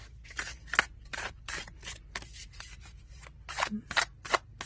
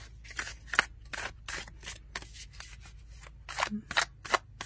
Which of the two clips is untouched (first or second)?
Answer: second